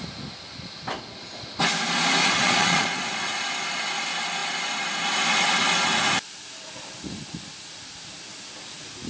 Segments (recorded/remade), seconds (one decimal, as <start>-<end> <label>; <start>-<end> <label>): 0.0-2.2 recorded; 2.2-3.0 remade; 3.0-9.1 recorded